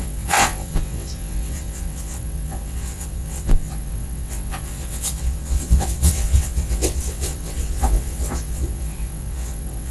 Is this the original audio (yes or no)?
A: no